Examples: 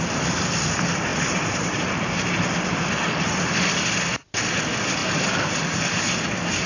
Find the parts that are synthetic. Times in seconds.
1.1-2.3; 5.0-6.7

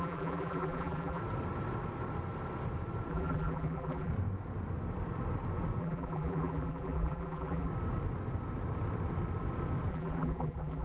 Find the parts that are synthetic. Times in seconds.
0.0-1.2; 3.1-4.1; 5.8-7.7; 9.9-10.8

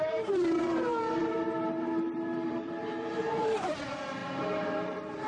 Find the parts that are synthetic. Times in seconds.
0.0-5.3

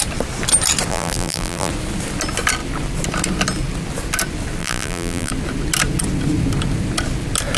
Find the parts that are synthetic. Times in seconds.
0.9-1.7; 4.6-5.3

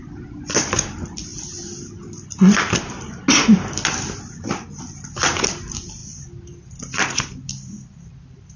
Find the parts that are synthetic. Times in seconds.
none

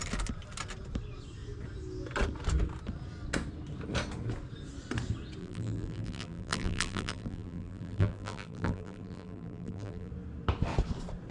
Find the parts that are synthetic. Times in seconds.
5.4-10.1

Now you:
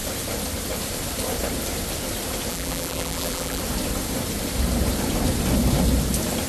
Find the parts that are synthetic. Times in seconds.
2.5-3.6